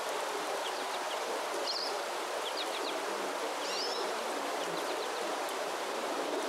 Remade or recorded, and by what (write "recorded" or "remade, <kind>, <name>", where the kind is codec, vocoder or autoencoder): recorded